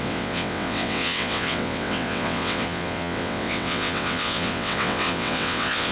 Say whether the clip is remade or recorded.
remade